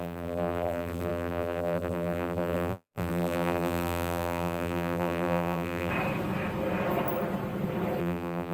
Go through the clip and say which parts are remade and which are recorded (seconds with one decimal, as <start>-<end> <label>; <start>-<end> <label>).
0.0-5.9 remade; 5.9-8.0 recorded; 8.0-8.5 remade

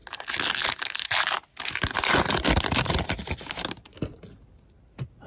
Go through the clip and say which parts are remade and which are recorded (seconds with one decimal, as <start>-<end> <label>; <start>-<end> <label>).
0.0-5.3 recorded